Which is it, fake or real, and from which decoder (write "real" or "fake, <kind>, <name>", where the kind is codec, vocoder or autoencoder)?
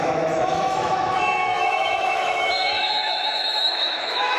fake, autoencoder, DAC-VAE